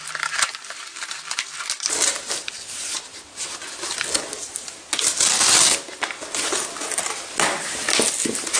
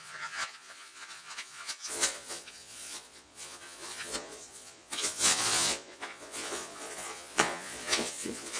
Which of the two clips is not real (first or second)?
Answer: second